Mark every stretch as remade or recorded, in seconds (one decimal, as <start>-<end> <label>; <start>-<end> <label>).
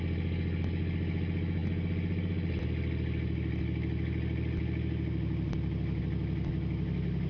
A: 0.0-7.3 recorded